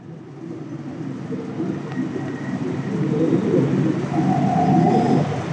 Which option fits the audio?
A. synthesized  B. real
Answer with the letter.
B